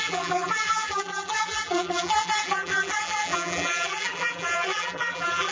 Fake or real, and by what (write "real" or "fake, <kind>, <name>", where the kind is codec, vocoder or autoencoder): fake, vocoder, BigVGAN v2